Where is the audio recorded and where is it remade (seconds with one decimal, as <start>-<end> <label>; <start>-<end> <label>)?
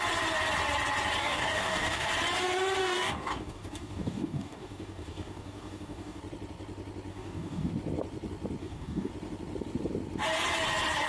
0.0-1.2 recorded; 1.2-2.1 remade; 2.1-2.8 recorded; 2.8-6.2 remade; 6.2-7.1 recorded; 7.1-7.7 remade; 7.7-8.6 recorded; 8.6-9.1 remade; 9.1-11.1 recorded